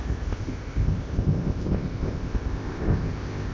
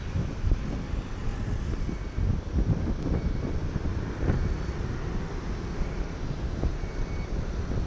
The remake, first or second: first